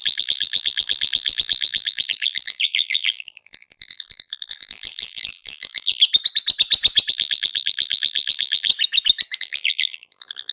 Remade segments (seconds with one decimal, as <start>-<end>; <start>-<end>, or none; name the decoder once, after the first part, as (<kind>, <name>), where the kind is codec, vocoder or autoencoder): 0.0-6.0 (vocoder, BigVGAN v2); 7.1-8.7; 9.4-10.5